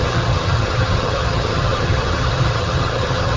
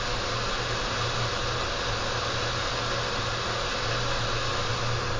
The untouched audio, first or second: second